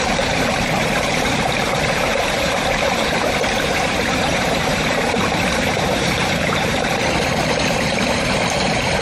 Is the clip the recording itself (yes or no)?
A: no